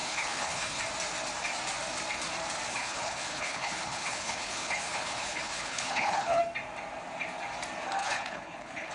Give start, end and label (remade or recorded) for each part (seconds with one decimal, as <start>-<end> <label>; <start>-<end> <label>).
0.0-0.8 remade; 0.8-2.7 recorded; 2.7-6.4 remade; 6.4-8.0 recorded; 8.0-8.9 remade